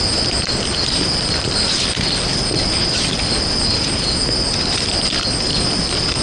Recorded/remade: recorded